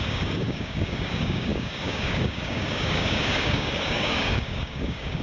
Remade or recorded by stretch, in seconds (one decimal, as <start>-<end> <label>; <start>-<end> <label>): 0.0-5.2 remade